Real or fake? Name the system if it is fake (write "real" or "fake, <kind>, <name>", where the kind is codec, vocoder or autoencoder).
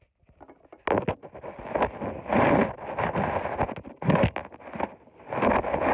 real